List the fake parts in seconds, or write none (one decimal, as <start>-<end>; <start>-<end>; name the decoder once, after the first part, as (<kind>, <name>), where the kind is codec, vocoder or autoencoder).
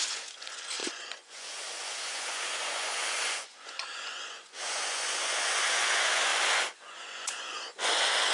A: 0.0-8.3 (vocoder, Vocos)